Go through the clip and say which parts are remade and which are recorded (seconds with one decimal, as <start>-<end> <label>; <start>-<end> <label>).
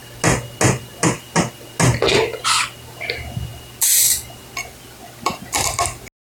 0.0-6.3 recorded